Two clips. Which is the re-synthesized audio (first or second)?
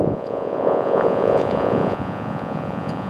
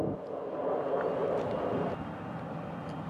first